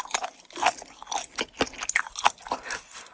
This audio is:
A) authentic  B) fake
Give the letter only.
A